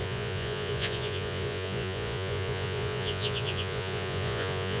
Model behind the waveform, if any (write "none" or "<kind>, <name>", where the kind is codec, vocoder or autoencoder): vocoder, Vocos